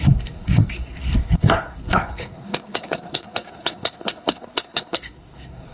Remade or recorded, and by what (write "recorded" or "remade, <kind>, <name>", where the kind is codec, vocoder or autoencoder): remade, codec, SNAC